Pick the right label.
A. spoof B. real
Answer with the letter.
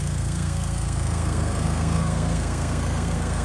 A